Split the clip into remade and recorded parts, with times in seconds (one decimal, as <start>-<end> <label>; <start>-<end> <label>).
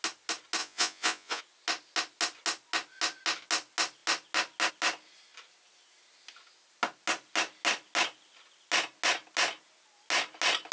0.0-0.6 recorded; 0.6-1.4 remade; 1.4-10.7 recorded